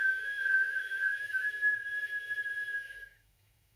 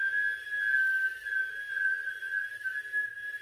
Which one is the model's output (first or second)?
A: first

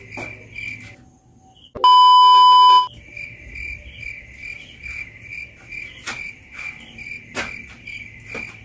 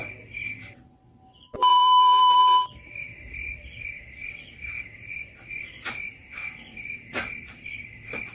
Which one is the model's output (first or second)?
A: second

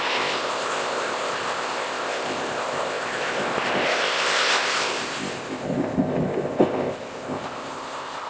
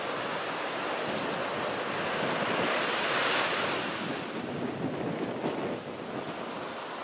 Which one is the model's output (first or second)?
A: first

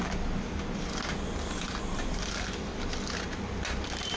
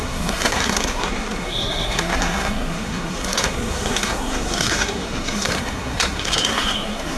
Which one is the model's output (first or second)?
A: second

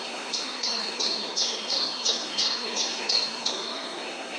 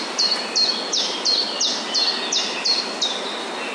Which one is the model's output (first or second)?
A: first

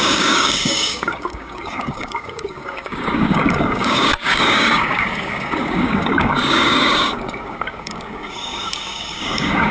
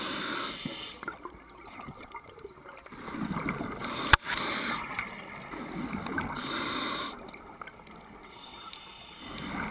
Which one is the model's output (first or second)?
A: first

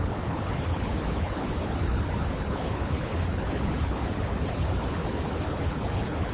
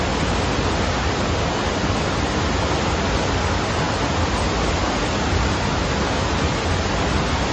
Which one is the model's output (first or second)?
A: first